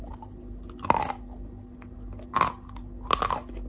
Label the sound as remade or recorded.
recorded